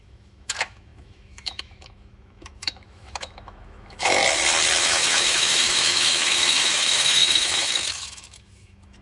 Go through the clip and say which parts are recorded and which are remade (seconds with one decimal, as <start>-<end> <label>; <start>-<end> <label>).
0.0-4.2 remade; 4.2-4.8 recorded; 4.8-9.0 remade